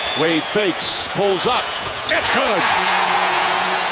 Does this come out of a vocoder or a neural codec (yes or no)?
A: yes